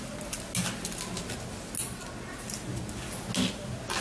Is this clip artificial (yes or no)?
no